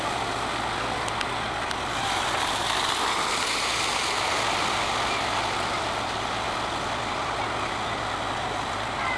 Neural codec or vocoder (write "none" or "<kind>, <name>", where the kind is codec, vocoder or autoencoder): none